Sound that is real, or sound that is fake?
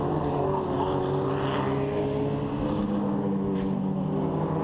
real